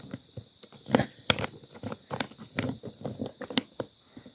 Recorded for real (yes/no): yes